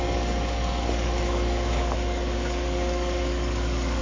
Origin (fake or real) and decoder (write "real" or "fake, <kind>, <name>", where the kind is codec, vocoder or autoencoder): fake, codec, DAC